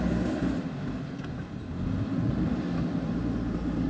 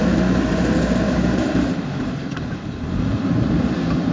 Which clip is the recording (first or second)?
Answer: first